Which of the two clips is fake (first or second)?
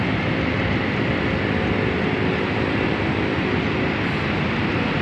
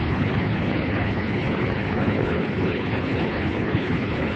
second